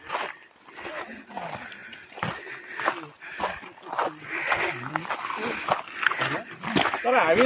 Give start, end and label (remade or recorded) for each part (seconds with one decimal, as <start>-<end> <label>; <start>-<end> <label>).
0.0-7.5 recorded